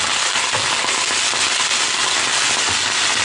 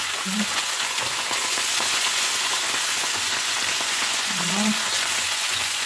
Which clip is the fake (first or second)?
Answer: second